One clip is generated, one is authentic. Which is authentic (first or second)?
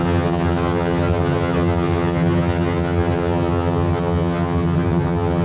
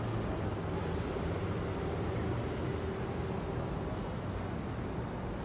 second